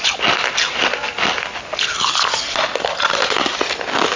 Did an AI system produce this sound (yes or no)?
no